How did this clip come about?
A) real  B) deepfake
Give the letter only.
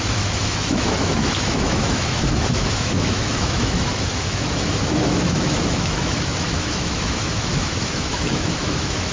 B